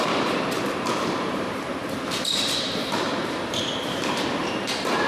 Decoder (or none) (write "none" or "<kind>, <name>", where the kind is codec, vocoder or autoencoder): vocoder, BigVGAN v2